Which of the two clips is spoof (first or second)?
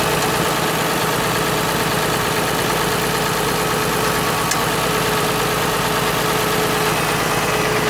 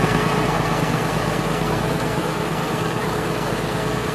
second